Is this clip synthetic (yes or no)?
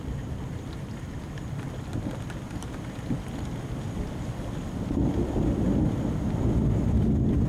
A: no